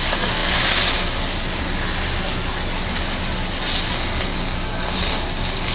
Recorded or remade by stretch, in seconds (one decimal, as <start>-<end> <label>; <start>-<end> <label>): 0.0-5.7 recorded